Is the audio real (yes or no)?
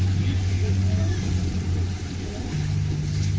yes